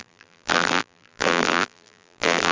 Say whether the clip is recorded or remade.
remade